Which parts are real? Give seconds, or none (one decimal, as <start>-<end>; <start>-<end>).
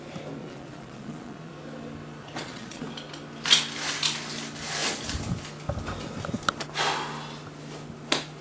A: 0.0-0.4; 1.5-2.2; 2.8-8.4